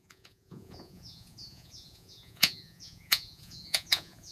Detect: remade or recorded remade